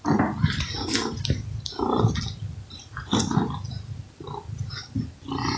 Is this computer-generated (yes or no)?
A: no